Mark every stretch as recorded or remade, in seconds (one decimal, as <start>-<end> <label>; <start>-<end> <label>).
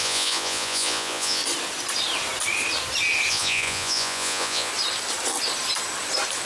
0.0-1.4 remade; 1.4-3.3 recorded; 3.3-4.7 remade; 4.7-6.5 recorded